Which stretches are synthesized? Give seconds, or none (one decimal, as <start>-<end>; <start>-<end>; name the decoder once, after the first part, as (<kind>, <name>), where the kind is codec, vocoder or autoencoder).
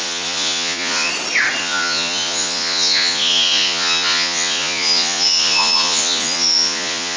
0.0-1.1 (vocoder, Vocos); 1.6-7.2